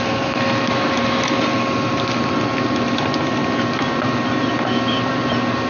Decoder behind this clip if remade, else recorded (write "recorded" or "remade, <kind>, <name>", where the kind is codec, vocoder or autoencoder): recorded